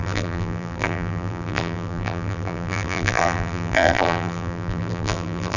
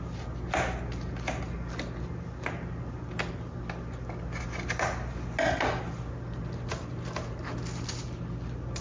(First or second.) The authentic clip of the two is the second